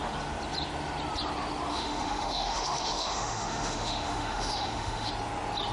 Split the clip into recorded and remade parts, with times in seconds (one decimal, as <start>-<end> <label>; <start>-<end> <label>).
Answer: 0.0-1.7 recorded; 1.7-5.1 remade; 5.1-5.7 recorded